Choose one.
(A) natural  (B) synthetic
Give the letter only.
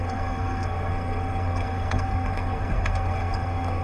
B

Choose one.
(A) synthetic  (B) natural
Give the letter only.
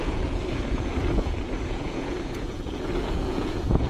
A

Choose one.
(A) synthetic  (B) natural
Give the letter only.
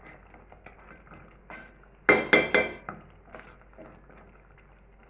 B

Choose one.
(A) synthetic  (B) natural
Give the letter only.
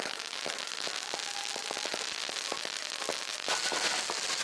B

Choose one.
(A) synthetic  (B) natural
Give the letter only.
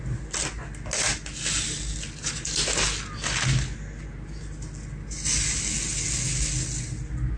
B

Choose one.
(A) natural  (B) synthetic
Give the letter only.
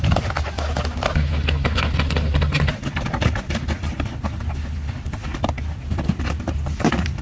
A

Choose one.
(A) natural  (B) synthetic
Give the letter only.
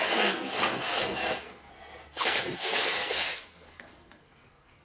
B